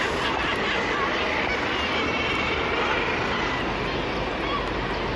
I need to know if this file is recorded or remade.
recorded